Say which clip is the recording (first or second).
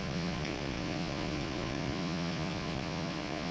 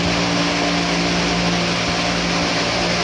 second